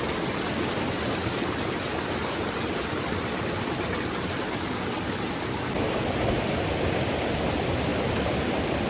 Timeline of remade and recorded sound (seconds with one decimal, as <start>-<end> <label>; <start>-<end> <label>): 0.0-8.9 recorded